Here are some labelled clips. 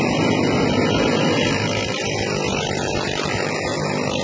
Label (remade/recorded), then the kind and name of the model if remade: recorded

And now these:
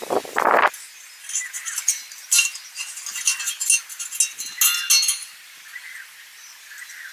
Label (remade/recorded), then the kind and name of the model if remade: recorded